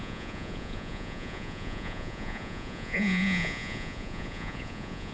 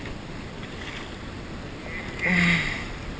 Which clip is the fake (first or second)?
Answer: first